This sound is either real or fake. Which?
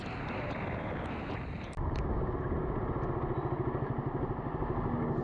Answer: real